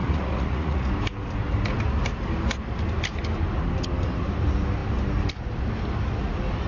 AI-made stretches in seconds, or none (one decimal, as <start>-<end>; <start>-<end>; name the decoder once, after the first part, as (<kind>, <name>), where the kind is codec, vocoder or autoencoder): 0.0-0.9 (vocoder, Vocos)